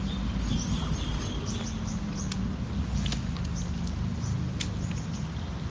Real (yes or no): yes